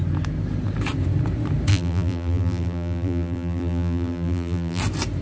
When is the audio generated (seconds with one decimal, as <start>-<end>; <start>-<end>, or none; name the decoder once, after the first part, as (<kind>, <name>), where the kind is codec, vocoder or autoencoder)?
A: 1.7-4.8 (vocoder, BigVGAN v2)

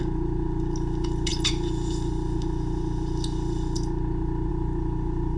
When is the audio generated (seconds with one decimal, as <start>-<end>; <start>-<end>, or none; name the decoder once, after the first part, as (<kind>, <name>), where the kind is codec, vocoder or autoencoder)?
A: none

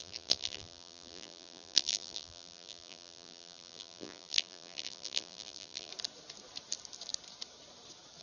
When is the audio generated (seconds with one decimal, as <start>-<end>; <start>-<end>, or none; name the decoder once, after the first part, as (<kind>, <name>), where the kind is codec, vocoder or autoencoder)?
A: 0.0-5.9 (vocoder, BigVGAN v2)